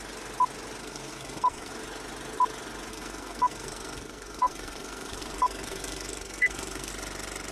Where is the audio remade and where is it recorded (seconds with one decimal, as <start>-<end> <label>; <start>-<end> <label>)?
0.0-0.8 recorded; 0.8-1.7 remade; 1.7-2.9 recorded; 2.9-6.9 remade; 6.9-7.5 recorded